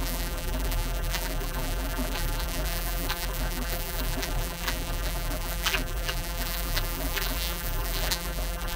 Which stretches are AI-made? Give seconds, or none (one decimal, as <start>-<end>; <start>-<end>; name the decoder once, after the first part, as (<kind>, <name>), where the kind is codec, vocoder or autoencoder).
0.0-8.8 (vocoder, BigVGAN v2)